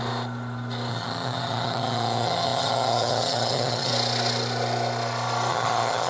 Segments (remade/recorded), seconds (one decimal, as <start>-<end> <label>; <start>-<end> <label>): 0.0-0.9 recorded; 0.9-3.9 remade; 3.9-5.5 recorded; 5.5-6.1 remade

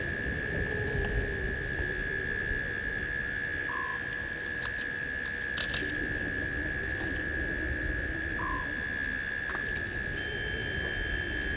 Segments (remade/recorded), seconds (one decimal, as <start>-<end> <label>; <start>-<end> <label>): 0.0-11.6 recorded

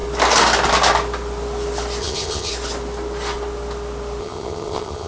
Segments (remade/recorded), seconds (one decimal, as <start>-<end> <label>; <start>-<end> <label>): 0.0-2.0 recorded; 2.0-2.5 remade; 2.5-4.2 recorded; 4.2-5.1 remade

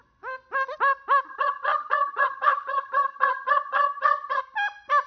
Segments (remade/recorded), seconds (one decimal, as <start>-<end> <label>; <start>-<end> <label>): 0.0-1.3 recorded; 1.3-4.4 remade; 4.4-5.1 recorded

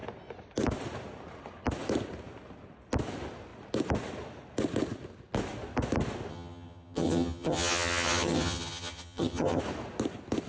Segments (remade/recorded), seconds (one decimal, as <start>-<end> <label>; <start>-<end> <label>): 0.0-6.3 recorded; 6.3-9.6 remade; 9.6-10.5 recorded

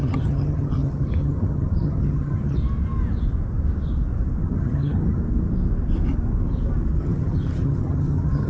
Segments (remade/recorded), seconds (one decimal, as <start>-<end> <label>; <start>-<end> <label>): 0.0-2.6 remade; 2.6-4.4 recorded; 4.4-5.2 remade; 5.2-7.0 recorded; 7.0-8.5 remade

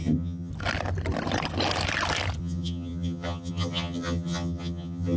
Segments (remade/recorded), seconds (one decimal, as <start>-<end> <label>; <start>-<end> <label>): 0.0-0.5 remade; 0.5-2.4 recorded; 2.4-5.2 remade

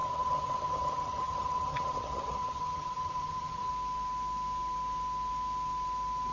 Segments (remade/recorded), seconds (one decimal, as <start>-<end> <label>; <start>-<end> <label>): 0.0-3.7 remade; 3.7-6.3 recorded